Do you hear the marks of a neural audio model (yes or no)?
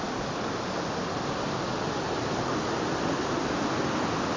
no